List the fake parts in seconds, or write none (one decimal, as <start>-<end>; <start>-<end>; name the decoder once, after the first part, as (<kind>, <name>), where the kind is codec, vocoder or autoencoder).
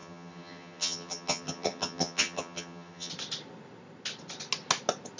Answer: 0.0-3.1 (vocoder, HiFi-GAN)